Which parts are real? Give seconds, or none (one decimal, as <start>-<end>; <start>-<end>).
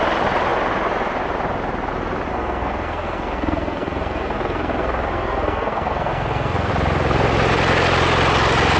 0.0-2.3; 6.7-8.8